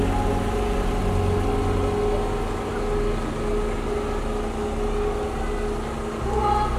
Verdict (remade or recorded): recorded